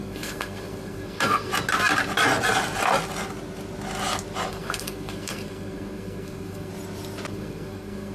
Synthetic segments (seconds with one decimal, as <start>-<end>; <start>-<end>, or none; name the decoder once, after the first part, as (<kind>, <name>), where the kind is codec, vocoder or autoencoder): 0.0-1.5 (codec, SNAC); 4.5-6.7; 7.3-8.1